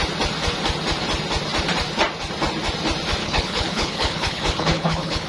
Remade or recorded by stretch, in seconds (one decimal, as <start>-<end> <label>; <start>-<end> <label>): 0.0-3.2 recorded; 3.2-5.3 remade